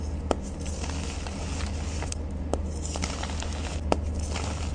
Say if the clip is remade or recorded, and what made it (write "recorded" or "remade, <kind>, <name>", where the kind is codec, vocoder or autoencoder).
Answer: recorded